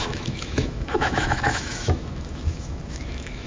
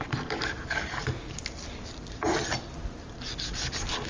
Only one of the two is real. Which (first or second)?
second